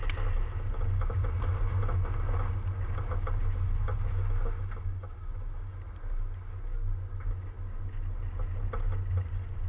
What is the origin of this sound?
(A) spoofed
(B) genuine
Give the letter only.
B